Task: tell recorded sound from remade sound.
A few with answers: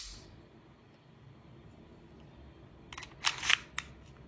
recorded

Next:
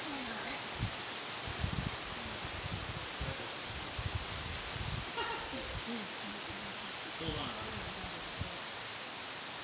recorded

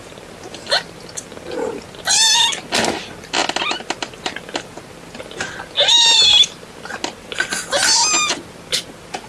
recorded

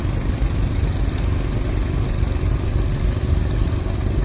remade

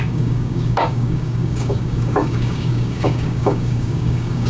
remade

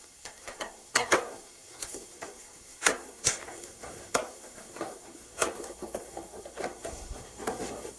remade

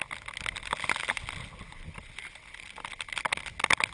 recorded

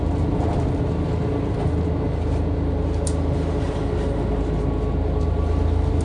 recorded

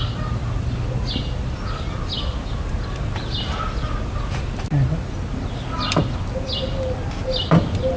recorded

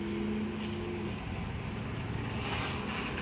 recorded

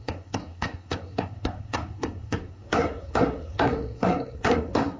remade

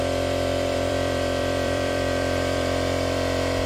remade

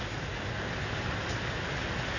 remade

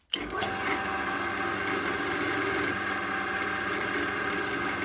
recorded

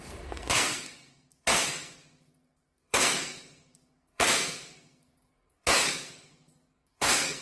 remade